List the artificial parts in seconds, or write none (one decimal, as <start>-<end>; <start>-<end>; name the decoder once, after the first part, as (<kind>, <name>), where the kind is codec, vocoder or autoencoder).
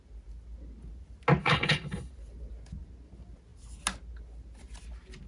1.4-2.1 (codec, HILCodec)